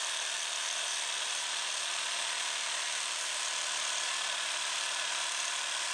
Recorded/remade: remade